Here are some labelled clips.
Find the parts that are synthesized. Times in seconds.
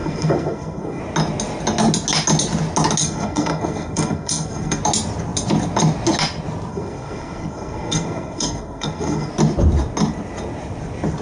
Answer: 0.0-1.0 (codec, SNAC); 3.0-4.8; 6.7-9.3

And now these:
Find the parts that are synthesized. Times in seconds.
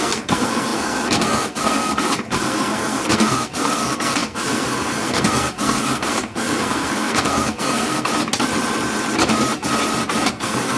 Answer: 0.0-8.1 (codec, SNAC); 10.3-10.8